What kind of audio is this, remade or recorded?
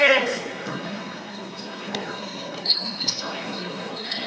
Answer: remade